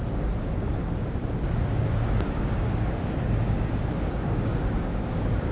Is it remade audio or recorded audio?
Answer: remade